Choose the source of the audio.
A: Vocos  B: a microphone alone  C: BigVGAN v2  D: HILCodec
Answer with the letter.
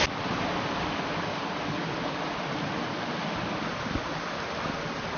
B